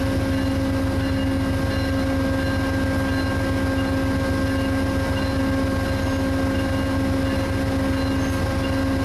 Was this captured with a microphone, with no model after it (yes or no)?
yes